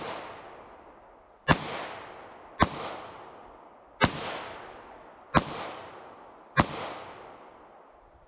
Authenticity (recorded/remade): recorded